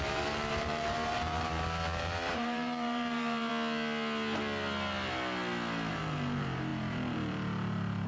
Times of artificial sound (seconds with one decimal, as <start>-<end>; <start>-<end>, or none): 0.0-3.5; 5.9-8.1